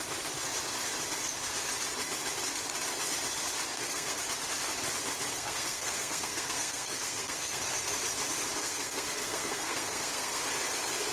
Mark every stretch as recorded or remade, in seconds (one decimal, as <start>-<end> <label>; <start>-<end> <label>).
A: 0.0-3.7 recorded; 3.7-4.2 remade; 4.2-5.3 recorded; 5.3-7.6 remade; 7.6-8.6 recorded; 8.6-10.4 remade; 10.4-11.1 recorded